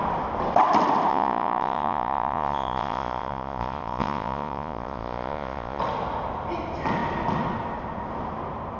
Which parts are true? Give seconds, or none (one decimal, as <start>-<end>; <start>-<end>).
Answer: 0.0-1.1; 5.8-8.8